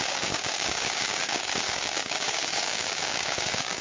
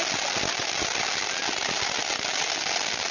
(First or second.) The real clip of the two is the second